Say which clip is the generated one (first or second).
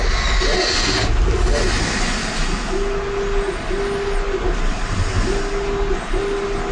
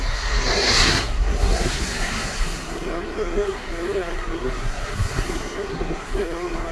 second